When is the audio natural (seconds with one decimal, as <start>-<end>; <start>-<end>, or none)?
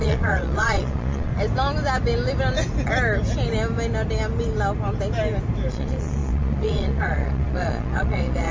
1.3-5.7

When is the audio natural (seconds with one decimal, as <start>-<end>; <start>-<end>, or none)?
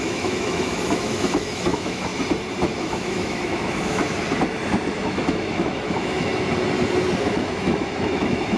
2.1-2.8; 4.0-4.9; 6.3-7.2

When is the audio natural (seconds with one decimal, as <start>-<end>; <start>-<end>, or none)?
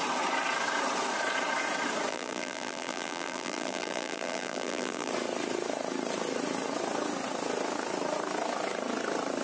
0.0-2.1; 5.1-9.4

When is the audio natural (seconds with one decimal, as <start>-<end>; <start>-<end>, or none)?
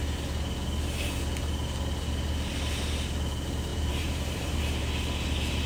0.0-3.7; 4.8-5.7